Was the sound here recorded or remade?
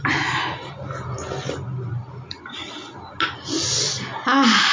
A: recorded